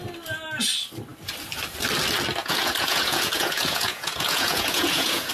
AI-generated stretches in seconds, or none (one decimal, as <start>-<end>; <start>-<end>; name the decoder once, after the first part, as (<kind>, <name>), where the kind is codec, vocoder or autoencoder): 2.4-5.3 (vocoder, Vocos)